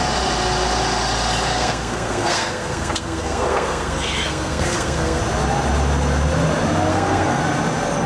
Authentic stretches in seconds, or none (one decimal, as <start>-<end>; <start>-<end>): 0.0-1.5; 5.2-6.9; 7.4-8.1